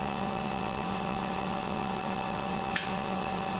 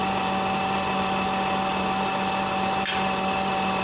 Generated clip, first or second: first